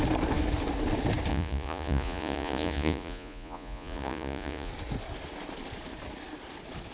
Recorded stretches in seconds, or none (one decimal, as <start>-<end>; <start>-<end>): 0.0-1.3; 4.7-6.9